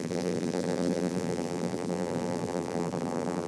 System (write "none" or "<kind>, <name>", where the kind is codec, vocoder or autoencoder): vocoder, BigVGAN v2